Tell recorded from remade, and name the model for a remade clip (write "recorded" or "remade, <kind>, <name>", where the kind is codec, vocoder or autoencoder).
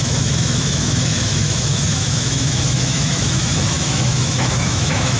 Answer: remade, autoencoder, DAC-VAE